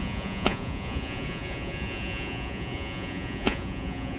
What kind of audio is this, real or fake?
fake